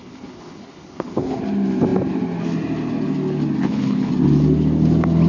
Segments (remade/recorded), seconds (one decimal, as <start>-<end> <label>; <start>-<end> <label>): 0.0-1.4 remade; 1.4-3.6 recorded; 3.6-4.1 remade; 4.1-5.3 recorded

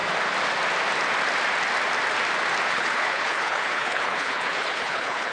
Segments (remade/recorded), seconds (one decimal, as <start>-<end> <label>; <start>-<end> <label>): 0.0-2.7 recorded; 2.7-5.3 remade

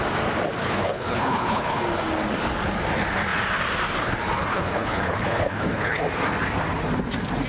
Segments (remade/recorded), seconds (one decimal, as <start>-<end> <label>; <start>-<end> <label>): 0.0-0.6 recorded; 0.6-1.8 remade; 1.8-4.5 recorded; 4.5-6.0 remade; 6.0-7.5 recorded

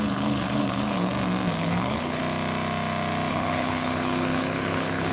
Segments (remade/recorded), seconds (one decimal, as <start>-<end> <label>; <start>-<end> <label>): 0.0-1.1 remade; 1.1-1.6 recorded; 1.6-2.2 remade; 2.2-3.3 recorded; 3.3-5.1 remade

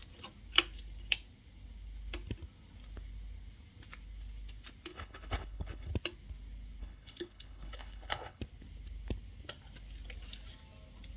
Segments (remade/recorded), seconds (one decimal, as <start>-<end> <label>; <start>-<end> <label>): 0.0-4.9 recorded; 4.9-5.9 remade; 5.9-6.8 recorded; 6.8-8.4 remade; 8.4-11.2 recorded

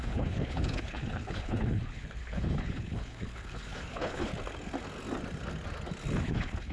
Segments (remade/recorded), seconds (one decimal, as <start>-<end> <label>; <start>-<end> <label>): 0.0-4.3 remade; 4.3-6.2 recorded; 6.2-6.7 remade

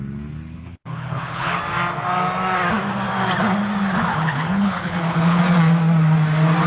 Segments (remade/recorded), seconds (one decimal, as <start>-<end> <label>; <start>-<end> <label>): 0.0-0.6 recorded; 0.6-1.6 remade; 1.6-4.1 recorded; 4.1-5.4 remade; 5.4-6.7 recorded

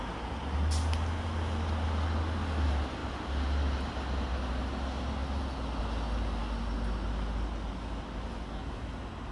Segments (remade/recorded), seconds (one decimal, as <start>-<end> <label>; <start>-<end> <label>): 0.0-9.3 recorded